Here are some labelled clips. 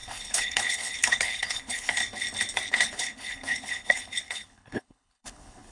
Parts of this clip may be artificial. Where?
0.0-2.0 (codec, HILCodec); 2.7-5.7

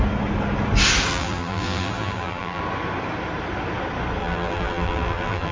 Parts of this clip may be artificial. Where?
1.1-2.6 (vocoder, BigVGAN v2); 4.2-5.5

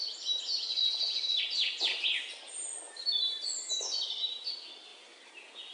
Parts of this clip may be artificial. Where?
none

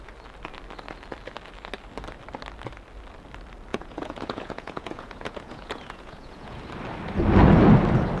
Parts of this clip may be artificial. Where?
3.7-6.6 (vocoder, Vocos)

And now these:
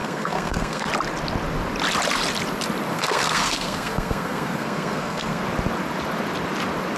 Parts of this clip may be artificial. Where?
0.0-0.9 (codec, SNAC); 2.9-5.4

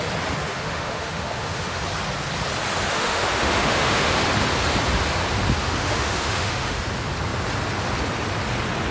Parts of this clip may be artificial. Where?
0.4-1.8 (autoencoder, DAC-VAE); 2.9-4.1; 5.6-6.8

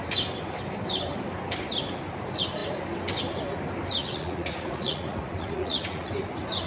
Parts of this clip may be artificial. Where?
4.0-6.1 (vocoder, Vocos)

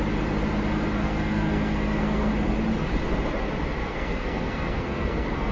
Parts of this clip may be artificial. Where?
1.0-2.3 (codec, SNAC); 3.8-5.5